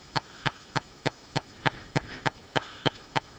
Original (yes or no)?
no